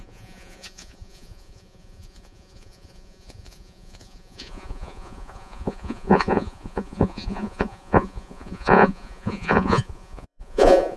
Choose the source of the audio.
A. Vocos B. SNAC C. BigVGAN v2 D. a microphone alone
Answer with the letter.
A